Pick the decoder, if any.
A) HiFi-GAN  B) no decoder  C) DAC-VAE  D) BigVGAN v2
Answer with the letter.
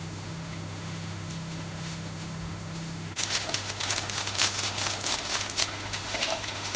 C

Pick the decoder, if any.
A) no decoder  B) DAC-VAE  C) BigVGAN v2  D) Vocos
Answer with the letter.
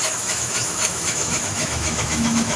B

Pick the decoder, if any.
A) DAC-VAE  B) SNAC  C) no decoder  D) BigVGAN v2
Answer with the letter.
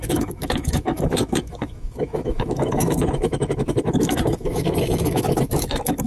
A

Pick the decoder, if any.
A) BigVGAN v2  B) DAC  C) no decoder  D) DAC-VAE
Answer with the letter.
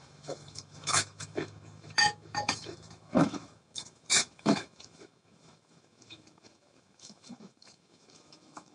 D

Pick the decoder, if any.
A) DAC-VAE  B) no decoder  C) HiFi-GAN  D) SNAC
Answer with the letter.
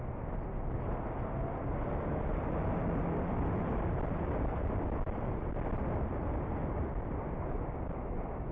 B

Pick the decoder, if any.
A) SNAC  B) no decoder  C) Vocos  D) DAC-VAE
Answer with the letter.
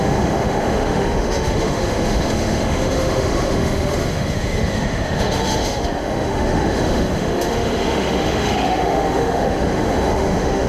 D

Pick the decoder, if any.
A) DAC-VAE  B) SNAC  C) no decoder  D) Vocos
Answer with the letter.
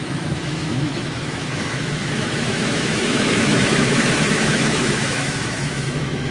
A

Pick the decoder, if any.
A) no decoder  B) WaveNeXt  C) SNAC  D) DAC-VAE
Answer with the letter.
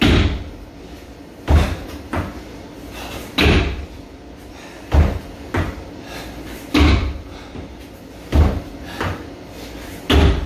A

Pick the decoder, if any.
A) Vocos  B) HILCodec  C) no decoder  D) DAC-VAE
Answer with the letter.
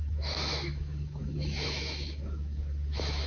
D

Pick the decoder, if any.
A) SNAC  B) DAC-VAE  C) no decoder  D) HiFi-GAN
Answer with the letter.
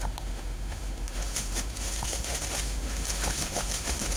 B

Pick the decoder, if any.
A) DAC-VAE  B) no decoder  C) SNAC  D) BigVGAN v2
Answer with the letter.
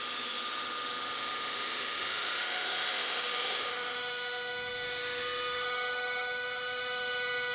A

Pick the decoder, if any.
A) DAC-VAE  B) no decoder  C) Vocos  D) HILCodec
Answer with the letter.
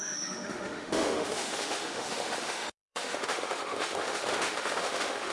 A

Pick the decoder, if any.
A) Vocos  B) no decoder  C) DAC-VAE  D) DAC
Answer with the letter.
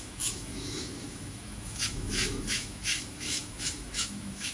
C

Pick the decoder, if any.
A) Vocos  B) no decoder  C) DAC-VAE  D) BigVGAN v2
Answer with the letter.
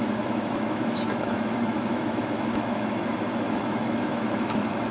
C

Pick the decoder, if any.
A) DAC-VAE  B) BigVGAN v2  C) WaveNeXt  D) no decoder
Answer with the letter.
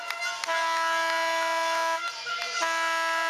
D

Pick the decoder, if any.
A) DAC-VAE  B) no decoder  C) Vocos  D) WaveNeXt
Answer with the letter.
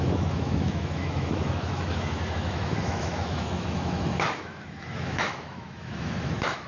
A